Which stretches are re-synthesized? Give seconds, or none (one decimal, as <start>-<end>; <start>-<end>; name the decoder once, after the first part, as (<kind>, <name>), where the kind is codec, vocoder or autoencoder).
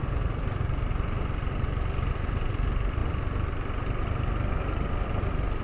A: none